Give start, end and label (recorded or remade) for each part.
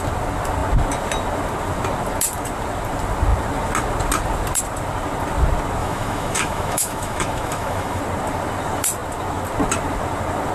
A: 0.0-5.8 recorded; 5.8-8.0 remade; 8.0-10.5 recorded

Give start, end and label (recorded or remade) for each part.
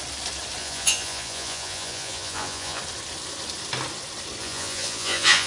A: 0.0-0.6 recorded; 0.6-2.8 remade; 2.8-4.4 recorded; 4.4-5.5 remade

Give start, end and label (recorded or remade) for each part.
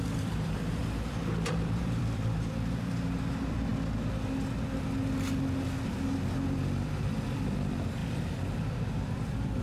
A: 0.0-0.8 remade; 0.8-1.5 recorded; 1.5-3.7 remade; 3.7-6.6 recorded; 6.6-8.0 remade; 8.0-8.8 recorded; 8.8-9.6 remade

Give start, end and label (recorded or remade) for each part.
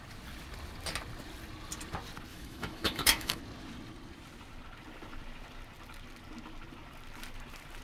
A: 0.0-2.3 recorded; 2.3-3.4 remade; 3.4-7.8 recorded